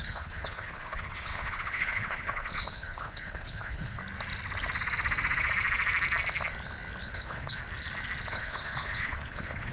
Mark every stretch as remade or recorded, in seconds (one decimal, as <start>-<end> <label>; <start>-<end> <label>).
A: 0.0-4.0 remade; 4.0-7.1 recorded; 7.1-7.6 remade; 7.6-8.3 recorded; 8.3-9.7 remade